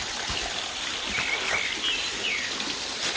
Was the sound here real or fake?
real